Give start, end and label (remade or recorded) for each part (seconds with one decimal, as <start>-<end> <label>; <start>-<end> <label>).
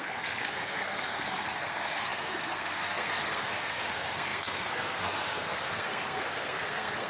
0.0-7.1 remade